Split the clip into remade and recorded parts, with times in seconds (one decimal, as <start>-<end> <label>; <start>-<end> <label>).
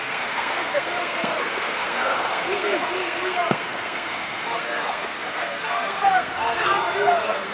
0.0-7.5 remade